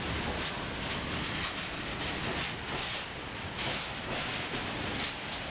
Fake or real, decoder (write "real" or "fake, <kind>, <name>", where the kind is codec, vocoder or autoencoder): real